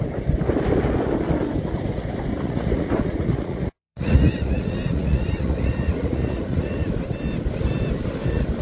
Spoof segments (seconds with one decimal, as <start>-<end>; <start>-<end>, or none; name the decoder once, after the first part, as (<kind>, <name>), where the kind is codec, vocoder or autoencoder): 2.3-6.9 (vocoder, Vocos)